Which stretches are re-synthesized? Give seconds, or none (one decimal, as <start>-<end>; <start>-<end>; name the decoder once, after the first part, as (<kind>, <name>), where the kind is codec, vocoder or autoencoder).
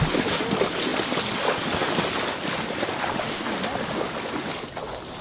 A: none